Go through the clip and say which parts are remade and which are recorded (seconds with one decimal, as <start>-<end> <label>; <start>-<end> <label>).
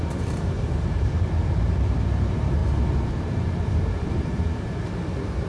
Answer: 0.0-5.5 remade